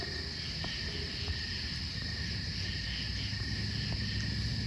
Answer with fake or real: real